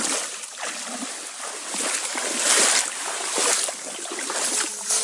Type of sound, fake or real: real